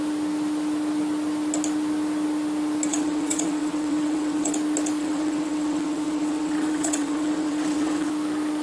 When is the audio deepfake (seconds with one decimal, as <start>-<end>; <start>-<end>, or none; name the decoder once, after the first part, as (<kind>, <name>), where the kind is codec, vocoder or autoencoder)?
2.9-4.5 (vocoder, WaveNeXt); 5.0-8.1